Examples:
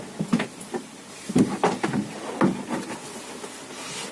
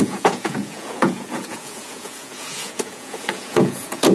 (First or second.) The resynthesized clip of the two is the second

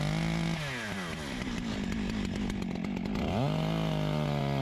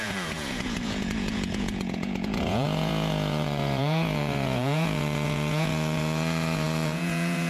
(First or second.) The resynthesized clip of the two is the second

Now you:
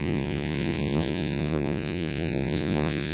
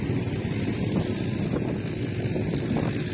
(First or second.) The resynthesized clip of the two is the first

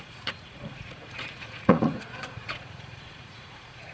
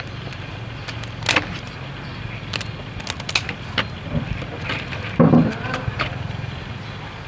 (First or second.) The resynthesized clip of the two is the first